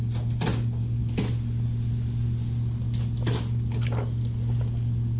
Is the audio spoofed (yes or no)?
no